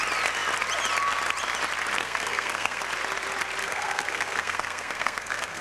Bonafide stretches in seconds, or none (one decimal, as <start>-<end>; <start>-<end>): 0.0-2.0; 2.8-3.6